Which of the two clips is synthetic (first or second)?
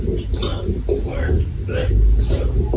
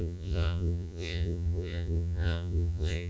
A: second